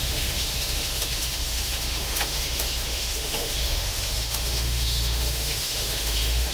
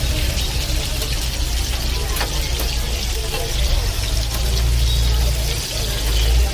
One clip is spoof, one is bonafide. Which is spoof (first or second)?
first